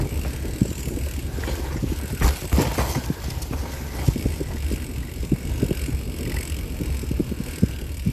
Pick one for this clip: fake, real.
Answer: real